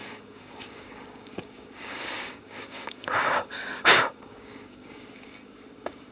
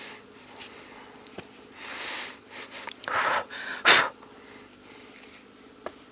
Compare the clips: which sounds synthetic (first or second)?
first